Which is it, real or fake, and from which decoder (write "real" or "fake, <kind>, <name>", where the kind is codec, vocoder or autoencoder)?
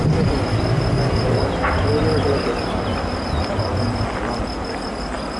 real